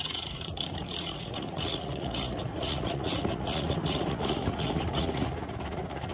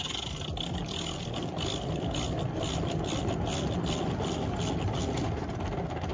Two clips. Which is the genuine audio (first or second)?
second